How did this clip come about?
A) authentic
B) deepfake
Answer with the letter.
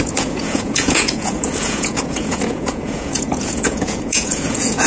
B